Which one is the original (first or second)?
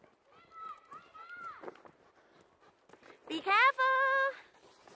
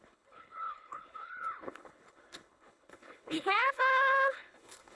first